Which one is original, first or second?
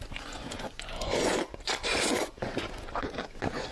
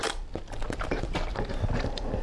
second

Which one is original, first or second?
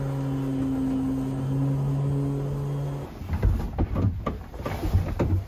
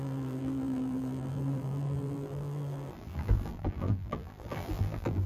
first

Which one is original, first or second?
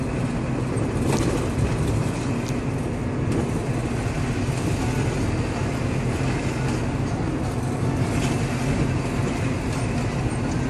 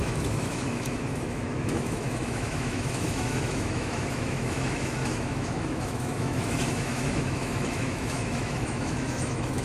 first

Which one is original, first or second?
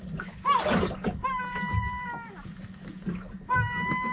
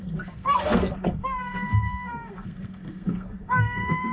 first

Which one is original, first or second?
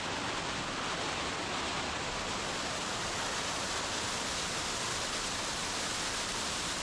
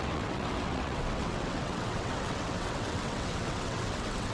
first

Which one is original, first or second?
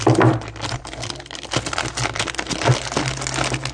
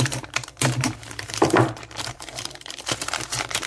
first